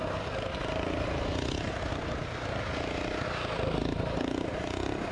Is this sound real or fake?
real